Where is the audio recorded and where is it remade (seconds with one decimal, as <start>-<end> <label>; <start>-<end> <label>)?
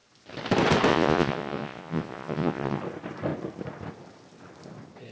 0.0-0.9 recorded; 0.9-2.8 remade; 2.8-5.1 recorded